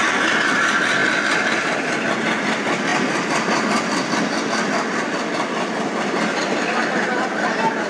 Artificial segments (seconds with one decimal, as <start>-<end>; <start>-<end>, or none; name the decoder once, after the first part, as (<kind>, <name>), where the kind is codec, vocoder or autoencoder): 1.0-2.1 (vocoder, BigVGAN v2)